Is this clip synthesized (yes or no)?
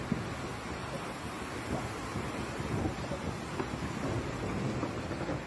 no